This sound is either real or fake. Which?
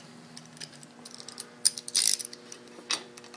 fake